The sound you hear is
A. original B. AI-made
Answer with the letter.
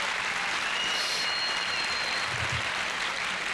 A